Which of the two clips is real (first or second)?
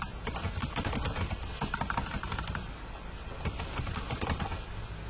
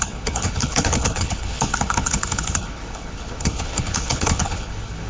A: first